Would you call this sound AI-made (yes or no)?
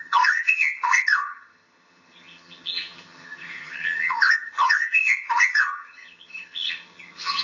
yes